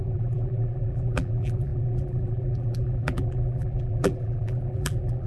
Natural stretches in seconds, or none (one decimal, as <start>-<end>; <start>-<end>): none